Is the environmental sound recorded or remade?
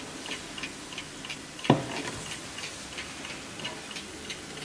recorded